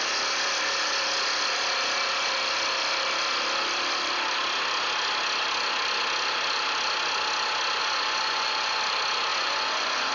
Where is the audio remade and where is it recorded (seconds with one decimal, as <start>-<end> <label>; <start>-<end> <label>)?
0.0-7.8 recorded; 7.8-8.8 remade; 8.8-9.3 recorded; 9.3-10.1 remade